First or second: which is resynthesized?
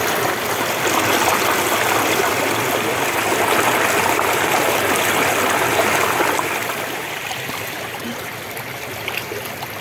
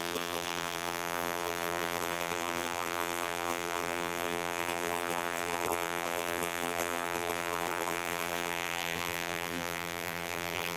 second